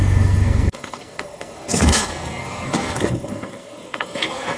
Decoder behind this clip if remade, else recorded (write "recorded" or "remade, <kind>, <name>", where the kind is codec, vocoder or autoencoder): remade, codec, SNAC